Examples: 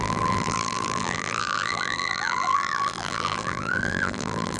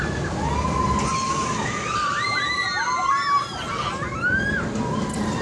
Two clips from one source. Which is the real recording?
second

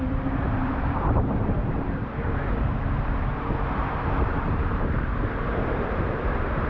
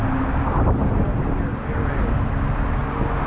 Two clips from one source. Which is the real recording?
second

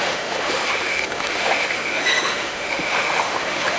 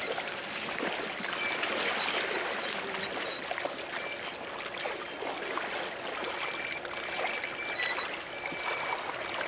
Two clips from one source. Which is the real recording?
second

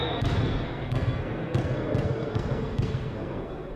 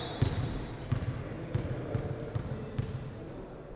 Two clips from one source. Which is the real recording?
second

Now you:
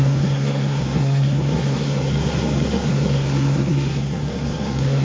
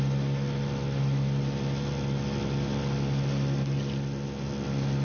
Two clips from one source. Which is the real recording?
second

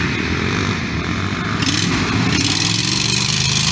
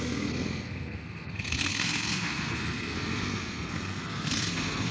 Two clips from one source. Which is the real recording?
first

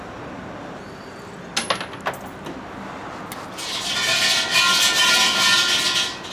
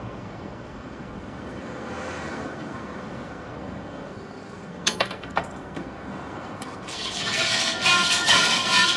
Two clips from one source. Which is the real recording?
first